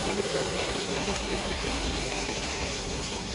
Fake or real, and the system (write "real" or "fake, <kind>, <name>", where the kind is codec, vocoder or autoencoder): fake, codec, SNAC